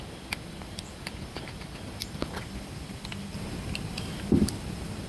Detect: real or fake real